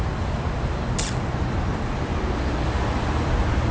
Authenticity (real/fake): real